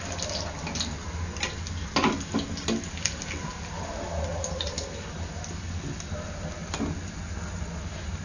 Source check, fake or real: real